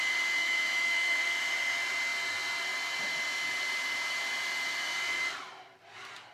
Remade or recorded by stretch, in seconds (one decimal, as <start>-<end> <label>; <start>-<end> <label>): 0.0-0.4 recorded; 0.4-1.2 remade; 1.2-6.3 recorded